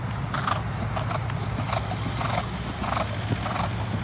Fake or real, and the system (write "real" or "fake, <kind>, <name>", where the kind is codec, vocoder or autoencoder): real